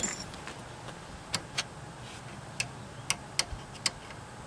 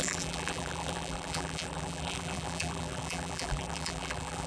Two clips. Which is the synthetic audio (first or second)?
second